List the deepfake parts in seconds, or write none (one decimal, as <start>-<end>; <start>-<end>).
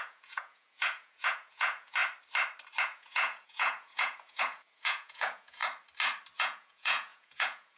0.0-2.0; 2.8-5.6; 6.4-7.8